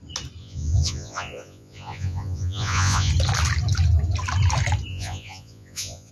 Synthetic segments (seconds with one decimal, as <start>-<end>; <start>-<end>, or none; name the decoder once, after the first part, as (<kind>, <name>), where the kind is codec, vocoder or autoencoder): 0.4-3.1 (vocoder, Vocos); 4.9-6.1